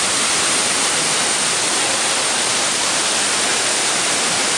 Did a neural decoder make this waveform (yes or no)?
no